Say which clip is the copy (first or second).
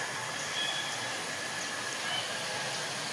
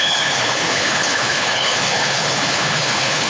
second